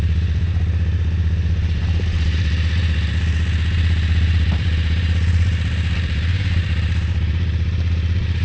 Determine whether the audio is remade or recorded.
remade